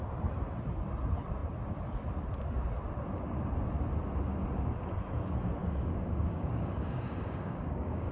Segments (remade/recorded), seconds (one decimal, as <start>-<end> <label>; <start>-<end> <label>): 0.0-5.6 recorded; 5.6-8.1 remade